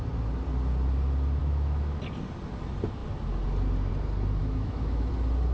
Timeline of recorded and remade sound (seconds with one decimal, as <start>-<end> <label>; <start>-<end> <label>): 0.0-1.4 recorded; 1.4-2.0 remade; 2.0-4.4 recorded; 4.4-5.1 remade; 5.1-5.5 recorded